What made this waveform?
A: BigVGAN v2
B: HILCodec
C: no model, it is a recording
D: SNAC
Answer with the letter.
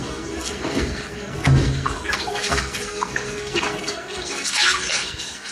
D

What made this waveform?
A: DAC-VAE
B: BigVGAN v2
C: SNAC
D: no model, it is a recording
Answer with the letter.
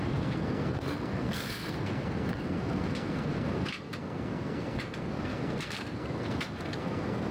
C